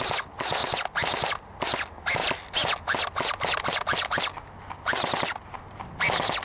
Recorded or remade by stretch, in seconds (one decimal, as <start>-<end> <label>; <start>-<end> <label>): 0.0-6.4 recorded

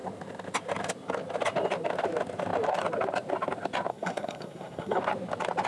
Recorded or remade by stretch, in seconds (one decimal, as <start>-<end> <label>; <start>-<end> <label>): 0.0-3.9 recorded; 3.9-5.0 remade; 5.0-5.7 recorded

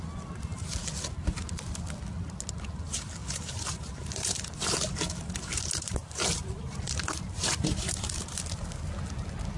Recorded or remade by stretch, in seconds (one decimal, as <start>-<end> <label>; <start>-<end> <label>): 0.0-3.2 recorded; 3.2-8.4 remade; 8.4-9.6 recorded

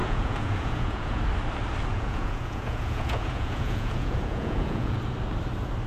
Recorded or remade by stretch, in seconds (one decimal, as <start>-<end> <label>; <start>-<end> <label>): 0.0-1.2 remade; 1.2-1.9 recorded; 1.9-5.0 remade; 5.0-5.9 recorded

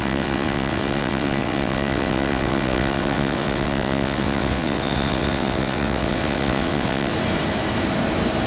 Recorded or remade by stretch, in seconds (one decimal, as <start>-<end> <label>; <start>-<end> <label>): 0.0-7.1 remade; 7.1-8.5 recorded

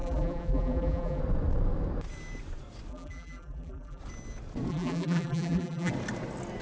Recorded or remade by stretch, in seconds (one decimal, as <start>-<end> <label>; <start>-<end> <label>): 0.0-1.2 remade; 1.2-2.9 recorded; 2.9-4.0 remade; 4.0-4.7 recorded; 4.7-5.9 remade; 5.9-6.6 recorded

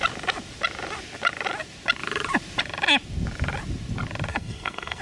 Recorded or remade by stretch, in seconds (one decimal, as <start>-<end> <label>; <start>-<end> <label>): 0.0-4.3 recorded; 4.3-5.0 remade